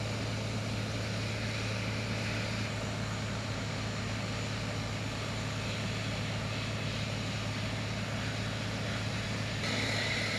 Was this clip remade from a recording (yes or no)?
no